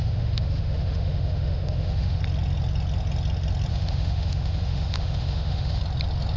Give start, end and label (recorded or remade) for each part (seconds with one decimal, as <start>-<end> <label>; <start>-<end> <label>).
0.0-2.2 remade; 2.2-3.7 recorded; 3.7-5.8 remade; 5.8-6.4 recorded